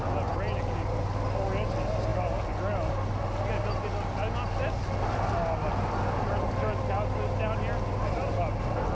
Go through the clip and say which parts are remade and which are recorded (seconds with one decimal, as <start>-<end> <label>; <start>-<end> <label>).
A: 0.0-8.9 recorded